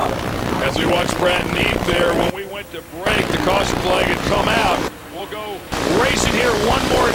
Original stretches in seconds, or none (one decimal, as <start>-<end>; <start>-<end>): 2.5-4.6; 5.2-7.1